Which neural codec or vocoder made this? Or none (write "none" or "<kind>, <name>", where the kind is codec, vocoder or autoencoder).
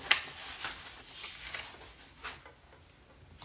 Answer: none